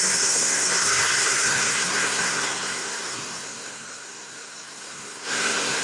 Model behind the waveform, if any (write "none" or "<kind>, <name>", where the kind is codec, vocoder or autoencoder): codec, SNAC